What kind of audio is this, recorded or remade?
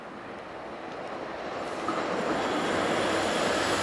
recorded